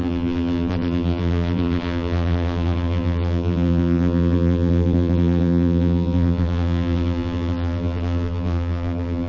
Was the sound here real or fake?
fake